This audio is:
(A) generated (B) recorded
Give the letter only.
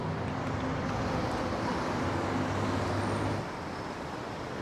B